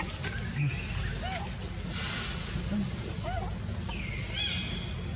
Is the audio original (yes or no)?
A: yes